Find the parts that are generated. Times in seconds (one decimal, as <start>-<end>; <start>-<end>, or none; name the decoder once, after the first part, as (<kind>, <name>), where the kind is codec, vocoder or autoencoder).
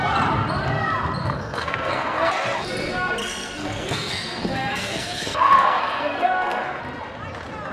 1.2-2.3 (codec, SNAC); 3.2-6.8